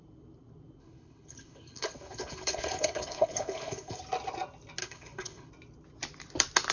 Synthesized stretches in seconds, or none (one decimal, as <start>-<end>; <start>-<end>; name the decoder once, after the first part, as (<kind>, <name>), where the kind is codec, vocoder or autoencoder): 0.8-4.0 (codec, HILCodec); 4.8-5.5